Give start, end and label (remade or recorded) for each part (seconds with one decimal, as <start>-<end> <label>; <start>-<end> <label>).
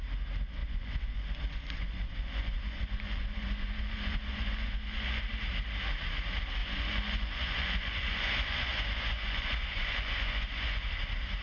0.0-0.6 recorded; 0.6-5.2 remade; 5.2-6.6 recorded; 6.6-10.9 remade; 10.9-11.4 recorded